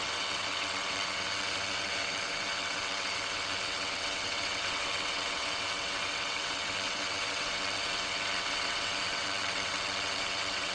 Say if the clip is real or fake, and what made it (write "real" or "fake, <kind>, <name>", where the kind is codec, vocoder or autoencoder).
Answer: fake, vocoder, WaveNeXt